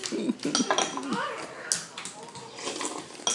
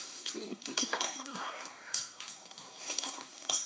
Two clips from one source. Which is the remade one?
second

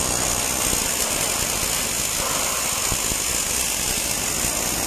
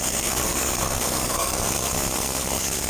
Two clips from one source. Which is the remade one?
second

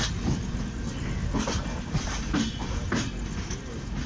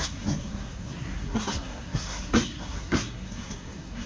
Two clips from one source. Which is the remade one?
second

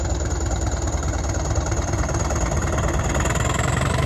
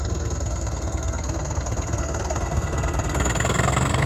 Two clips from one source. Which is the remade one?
second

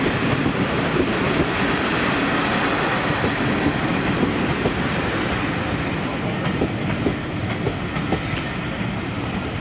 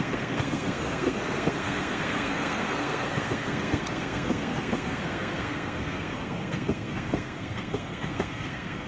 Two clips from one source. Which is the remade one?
second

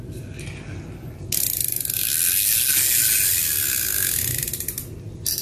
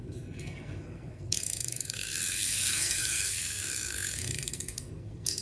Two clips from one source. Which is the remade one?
second